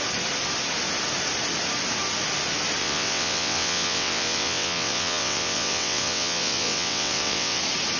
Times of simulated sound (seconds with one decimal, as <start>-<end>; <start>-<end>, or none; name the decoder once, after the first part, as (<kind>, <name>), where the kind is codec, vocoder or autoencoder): 2.8-7.6 (vocoder, WaveNeXt)